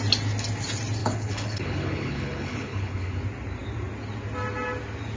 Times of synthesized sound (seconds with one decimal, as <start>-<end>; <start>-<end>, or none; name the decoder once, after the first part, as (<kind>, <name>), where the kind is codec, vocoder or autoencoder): 1.0-3.2 (codec, HILCodec)